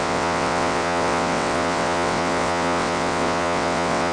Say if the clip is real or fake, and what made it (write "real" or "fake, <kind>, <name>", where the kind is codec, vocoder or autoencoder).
fake, vocoder, WaveNeXt